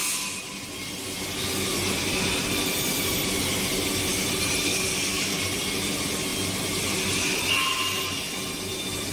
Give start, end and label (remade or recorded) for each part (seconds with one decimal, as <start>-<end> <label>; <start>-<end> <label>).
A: 0.0-4.7 recorded; 4.7-5.4 remade; 5.4-9.1 recorded